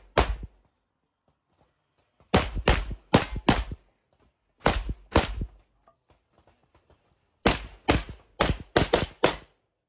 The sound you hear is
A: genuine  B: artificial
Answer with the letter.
A